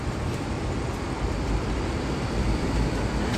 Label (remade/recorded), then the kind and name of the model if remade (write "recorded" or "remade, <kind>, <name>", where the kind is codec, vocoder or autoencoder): remade, vocoder, BigVGAN v2